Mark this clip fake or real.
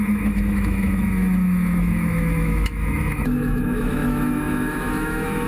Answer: fake